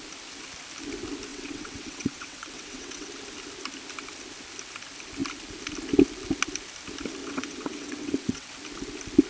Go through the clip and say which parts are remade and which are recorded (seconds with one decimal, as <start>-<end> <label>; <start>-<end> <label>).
0.0-1.3 recorded; 1.3-3.1 remade; 3.1-7.2 recorded; 7.2-8.5 remade; 8.5-9.3 recorded